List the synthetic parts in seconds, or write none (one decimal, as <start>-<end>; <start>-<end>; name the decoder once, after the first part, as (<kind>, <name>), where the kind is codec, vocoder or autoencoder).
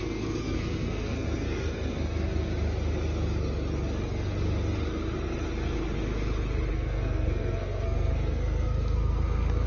0.0-2.5 (codec, SNAC); 6.7-9.7